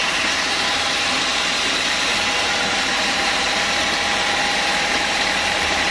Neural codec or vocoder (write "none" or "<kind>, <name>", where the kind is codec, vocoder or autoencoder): vocoder, BigVGAN v2